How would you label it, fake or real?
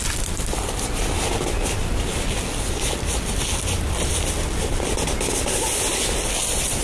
real